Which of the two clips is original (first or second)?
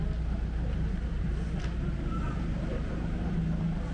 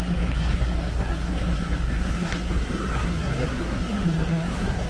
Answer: first